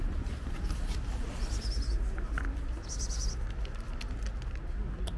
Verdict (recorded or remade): recorded